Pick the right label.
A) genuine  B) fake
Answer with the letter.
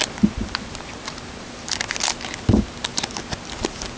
A